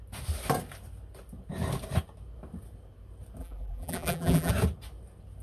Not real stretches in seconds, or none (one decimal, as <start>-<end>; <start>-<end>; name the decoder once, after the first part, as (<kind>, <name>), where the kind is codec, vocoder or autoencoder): 3.4-4.5 (vocoder, BigVGAN v2)